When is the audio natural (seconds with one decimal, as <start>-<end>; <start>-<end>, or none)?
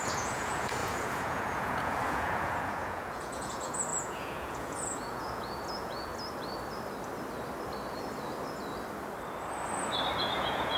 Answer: 6.1-10.2